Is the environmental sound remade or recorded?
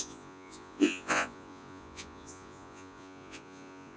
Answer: remade